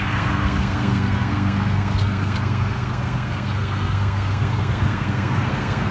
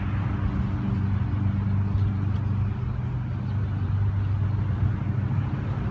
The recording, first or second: second